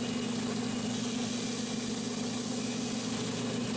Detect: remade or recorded recorded